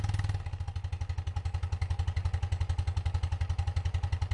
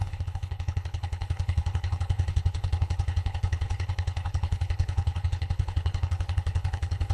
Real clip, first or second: first